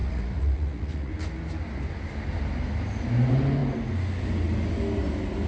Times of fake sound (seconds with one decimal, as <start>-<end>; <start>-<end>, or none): 0.0-1.1